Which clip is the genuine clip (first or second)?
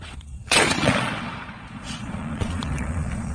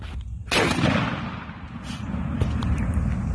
second